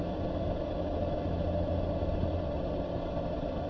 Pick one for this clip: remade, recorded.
recorded